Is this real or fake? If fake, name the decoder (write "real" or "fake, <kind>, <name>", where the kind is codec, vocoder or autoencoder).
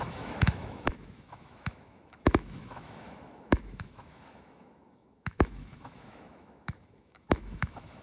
fake, autoencoder, DAC-VAE